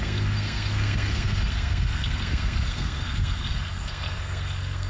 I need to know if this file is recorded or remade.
remade